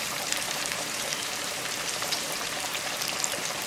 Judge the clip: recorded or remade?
remade